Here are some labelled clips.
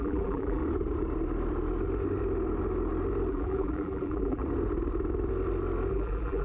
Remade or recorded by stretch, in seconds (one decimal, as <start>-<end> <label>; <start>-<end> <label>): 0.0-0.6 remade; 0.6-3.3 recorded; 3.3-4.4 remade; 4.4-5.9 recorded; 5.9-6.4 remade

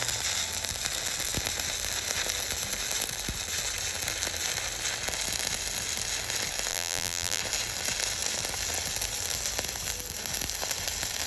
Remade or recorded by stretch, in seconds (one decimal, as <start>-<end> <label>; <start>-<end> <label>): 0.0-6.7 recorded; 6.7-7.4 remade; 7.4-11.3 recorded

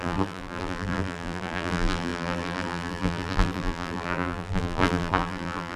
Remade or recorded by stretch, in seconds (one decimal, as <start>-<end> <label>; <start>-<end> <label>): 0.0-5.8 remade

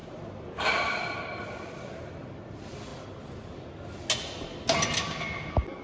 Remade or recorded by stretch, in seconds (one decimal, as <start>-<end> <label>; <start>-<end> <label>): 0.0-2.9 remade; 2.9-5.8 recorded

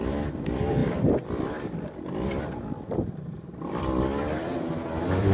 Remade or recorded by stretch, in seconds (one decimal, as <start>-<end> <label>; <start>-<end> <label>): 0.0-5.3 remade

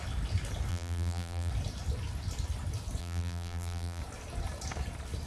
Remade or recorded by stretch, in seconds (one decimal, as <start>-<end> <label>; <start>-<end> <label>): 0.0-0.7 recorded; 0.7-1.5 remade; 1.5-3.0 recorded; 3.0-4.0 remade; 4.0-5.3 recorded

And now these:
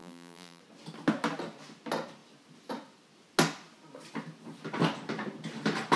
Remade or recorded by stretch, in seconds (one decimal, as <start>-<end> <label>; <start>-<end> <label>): 0.0-0.6 remade; 0.6-6.0 recorded

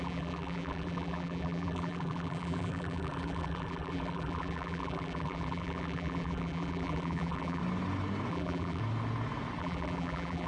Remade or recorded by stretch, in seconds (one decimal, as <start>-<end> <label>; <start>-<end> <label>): 0.0-7.6 remade; 7.6-8.3 recorded; 8.3-8.8 remade; 8.8-9.6 recorded; 9.6-10.5 remade